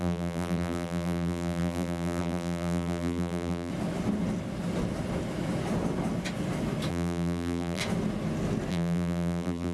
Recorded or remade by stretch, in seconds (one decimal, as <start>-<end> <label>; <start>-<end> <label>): 0.0-3.7 remade; 3.7-6.9 recorded; 6.9-7.8 remade; 7.8-8.7 recorded; 8.7-9.7 remade